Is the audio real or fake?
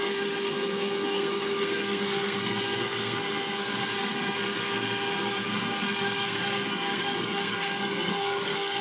fake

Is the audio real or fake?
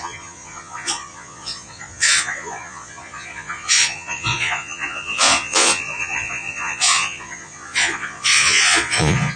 fake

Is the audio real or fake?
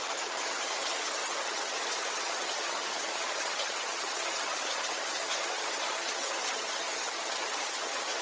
fake